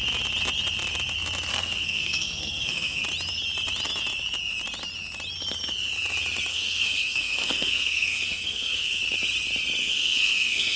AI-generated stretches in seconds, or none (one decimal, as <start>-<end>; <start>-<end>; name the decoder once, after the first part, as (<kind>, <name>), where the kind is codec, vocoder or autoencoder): 1.5-3.0 (codec, SNAC); 6.5-9.0; 9.8-10.8